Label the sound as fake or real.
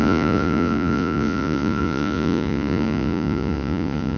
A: fake